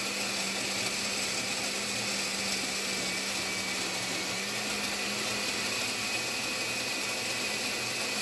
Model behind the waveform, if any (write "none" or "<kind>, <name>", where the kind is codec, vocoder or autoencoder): none